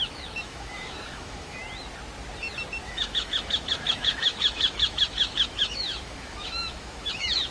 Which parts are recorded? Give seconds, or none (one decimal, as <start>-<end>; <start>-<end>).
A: 1.6-2.8